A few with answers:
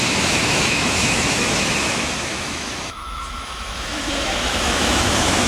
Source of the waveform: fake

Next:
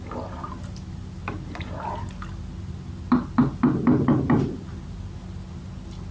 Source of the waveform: real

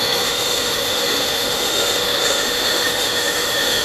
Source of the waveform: fake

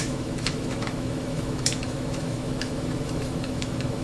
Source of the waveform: fake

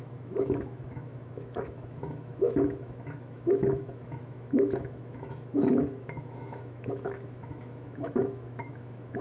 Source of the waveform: fake